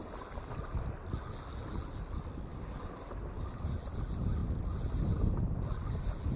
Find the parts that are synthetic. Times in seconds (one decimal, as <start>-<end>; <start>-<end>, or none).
none